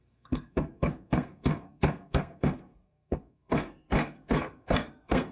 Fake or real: fake